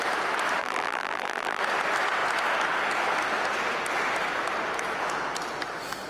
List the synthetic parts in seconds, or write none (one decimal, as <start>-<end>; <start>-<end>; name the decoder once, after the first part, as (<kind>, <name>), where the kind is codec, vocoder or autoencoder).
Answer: 0.6-1.6 (vocoder, BigVGAN v2)